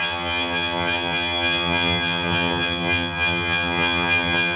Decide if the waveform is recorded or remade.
remade